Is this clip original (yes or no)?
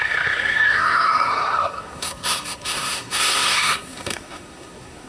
no